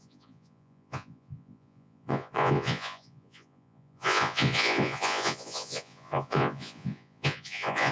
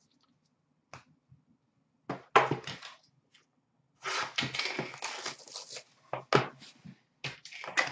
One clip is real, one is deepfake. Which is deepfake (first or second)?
first